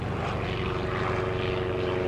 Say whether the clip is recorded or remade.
recorded